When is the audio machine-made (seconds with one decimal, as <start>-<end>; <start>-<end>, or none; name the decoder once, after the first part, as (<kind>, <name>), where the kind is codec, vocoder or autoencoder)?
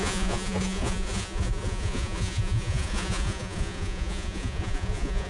0.0-5.3 (vocoder, Vocos)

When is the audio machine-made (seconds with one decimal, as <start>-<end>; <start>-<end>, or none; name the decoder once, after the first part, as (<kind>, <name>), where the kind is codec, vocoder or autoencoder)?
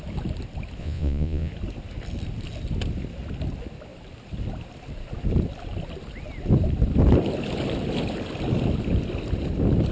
0.8-1.5 (vocoder, Vocos)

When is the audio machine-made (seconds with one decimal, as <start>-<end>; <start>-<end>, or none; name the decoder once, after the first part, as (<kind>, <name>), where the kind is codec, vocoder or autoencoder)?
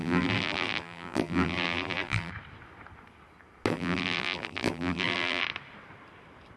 0.0-2.3 (vocoder, BigVGAN v2); 3.7-5.4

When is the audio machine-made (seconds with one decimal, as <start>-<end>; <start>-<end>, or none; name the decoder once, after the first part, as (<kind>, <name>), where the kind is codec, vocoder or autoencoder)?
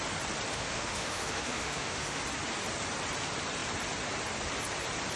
0.5-2.2 (autoencoder, DAC-VAE)